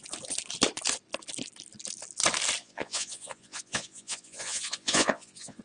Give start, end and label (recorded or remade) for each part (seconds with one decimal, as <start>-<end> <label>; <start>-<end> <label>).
0.0-2.6 recorded; 2.6-5.6 remade